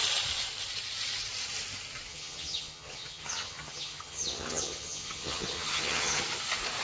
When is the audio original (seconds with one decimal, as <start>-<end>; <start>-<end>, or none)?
0.0-2.1; 6.2-6.8